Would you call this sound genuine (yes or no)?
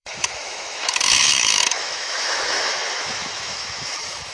no